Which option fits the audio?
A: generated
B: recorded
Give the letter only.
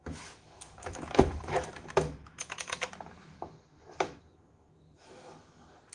A